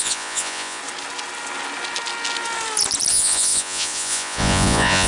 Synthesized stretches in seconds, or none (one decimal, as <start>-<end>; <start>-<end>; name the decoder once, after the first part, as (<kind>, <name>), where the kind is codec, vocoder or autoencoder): 0.0-0.8 (vocoder, Vocos); 3.1-5.1